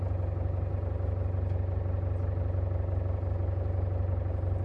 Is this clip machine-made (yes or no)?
no